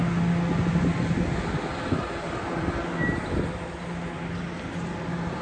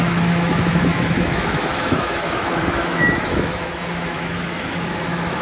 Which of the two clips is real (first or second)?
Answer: first